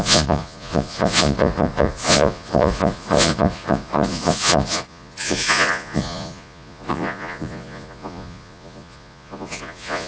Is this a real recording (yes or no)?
no